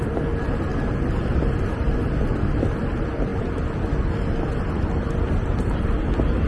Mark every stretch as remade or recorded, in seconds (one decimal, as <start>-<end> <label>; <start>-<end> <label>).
0.0-6.5 recorded